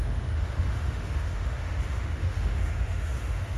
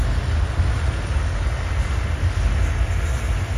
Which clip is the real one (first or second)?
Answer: second